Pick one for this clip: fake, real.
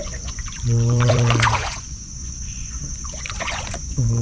fake